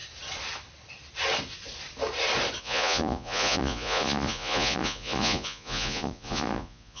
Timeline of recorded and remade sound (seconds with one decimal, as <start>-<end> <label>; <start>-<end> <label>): 0.0-2.6 recorded; 2.6-7.0 remade